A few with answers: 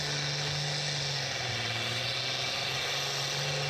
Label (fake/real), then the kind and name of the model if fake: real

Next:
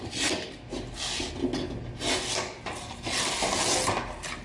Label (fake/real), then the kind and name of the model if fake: real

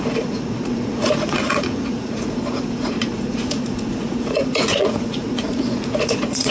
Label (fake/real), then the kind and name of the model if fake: fake, vocoder, Vocos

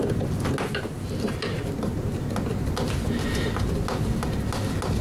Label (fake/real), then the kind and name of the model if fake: real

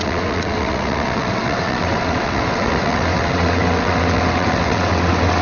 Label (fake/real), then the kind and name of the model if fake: fake, vocoder, WaveNeXt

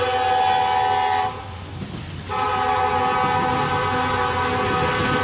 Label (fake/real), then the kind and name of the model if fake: real